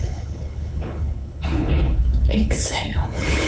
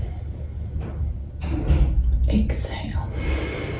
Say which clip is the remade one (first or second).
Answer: first